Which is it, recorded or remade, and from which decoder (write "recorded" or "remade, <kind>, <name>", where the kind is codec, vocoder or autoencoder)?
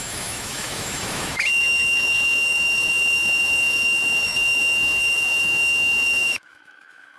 remade, autoencoder, DAC-VAE